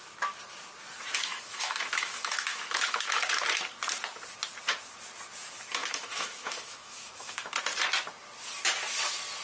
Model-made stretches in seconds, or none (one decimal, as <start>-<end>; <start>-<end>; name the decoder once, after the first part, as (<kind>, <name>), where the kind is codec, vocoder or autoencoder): 1.2-3.3 (autoencoder, DAC-VAE); 5.8-7.5